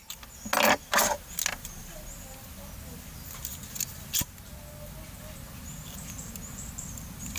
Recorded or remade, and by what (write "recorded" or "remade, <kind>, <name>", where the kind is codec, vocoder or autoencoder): recorded